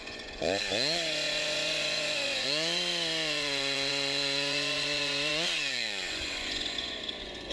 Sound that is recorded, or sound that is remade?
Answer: remade